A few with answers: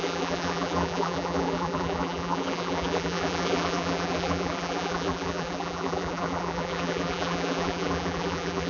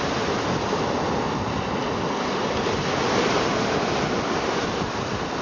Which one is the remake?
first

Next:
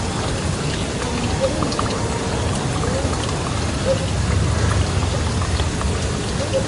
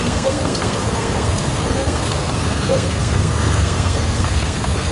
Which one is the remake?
second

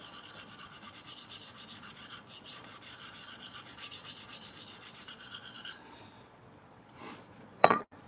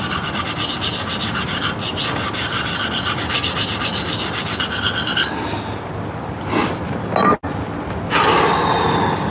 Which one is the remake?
first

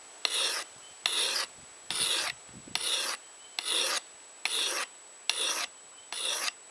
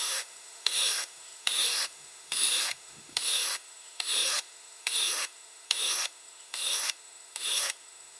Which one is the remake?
second